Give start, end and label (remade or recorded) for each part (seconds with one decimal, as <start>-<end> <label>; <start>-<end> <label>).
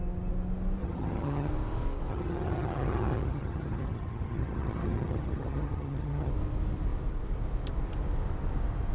0.0-0.8 recorded; 0.8-1.5 remade; 1.5-2.1 recorded; 2.1-6.3 remade; 6.3-8.9 recorded